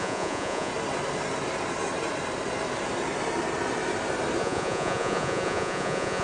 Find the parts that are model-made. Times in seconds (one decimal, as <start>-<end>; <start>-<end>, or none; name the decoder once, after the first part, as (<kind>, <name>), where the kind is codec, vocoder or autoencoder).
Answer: 0.0-0.7 (vocoder, Vocos); 4.4-6.2